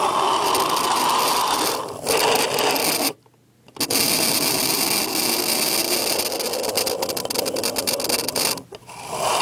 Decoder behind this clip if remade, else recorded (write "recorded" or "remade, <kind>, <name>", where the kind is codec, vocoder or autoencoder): recorded